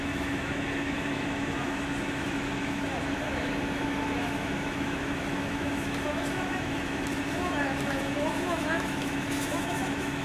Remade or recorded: remade